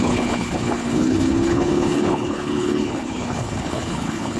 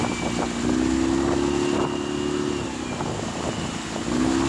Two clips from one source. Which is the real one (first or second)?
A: second